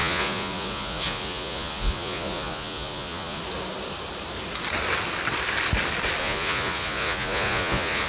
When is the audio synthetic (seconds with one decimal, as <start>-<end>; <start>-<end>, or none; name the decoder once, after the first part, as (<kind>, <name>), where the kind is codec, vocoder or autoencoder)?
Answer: 0.0-3.4 (vocoder, Vocos); 6.2-8.1